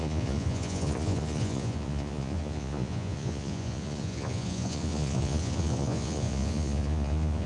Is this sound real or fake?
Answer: fake